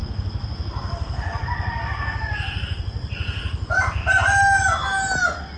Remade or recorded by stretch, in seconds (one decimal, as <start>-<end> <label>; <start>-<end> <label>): 0.0-5.6 recorded